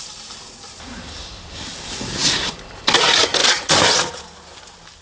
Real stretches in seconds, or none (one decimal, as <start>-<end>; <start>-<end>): 0.0-5.0

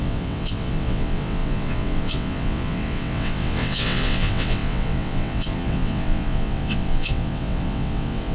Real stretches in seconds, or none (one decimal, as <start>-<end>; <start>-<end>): none